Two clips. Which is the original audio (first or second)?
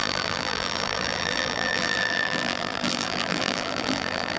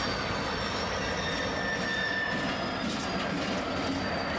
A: second